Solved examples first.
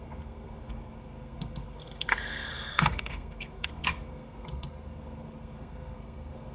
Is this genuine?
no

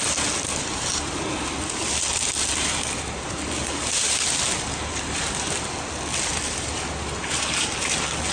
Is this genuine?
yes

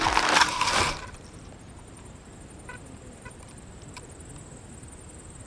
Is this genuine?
no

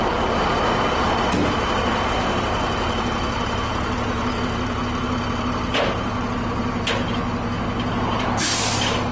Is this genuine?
yes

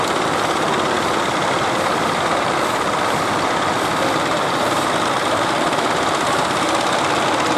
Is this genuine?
yes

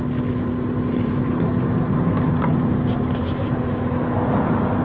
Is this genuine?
yes